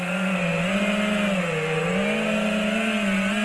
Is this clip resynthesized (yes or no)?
no